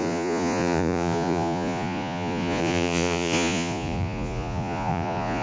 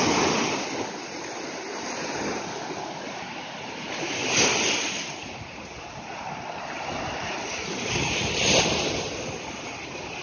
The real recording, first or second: second